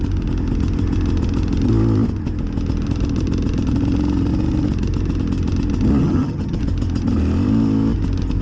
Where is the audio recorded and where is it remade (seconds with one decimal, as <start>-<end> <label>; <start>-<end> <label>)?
0.0-6.0 recorded; 6.0-6.6 remade; 6.6-8.4 recorded